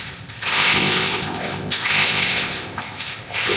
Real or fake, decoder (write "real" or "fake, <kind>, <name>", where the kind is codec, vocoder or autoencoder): fake, codec, ZipCodec